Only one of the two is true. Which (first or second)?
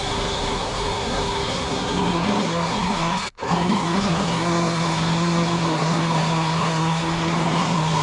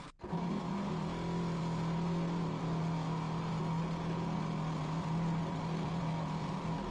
second